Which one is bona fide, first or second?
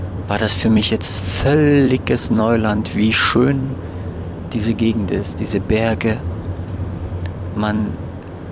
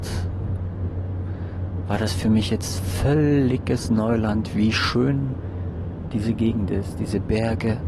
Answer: second